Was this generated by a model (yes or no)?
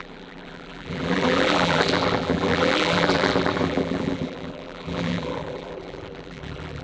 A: yes